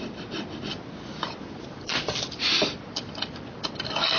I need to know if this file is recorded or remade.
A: remade